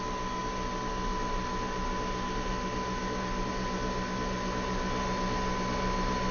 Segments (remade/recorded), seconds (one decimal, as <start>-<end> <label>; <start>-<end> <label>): 0.0-6.3 recorded